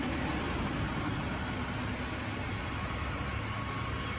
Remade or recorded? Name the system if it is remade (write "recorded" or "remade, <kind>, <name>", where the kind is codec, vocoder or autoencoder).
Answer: recorded